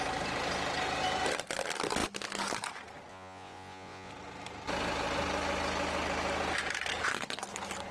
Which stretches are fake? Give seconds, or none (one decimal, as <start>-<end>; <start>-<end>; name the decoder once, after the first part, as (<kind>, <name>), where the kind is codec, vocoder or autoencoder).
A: 3.1-4.1 (vocoder, Vocos)